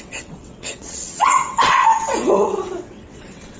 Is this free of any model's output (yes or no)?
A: no